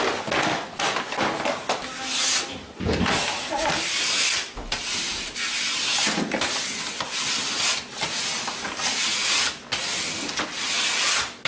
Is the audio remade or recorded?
recorded